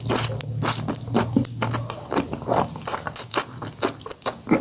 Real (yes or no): yes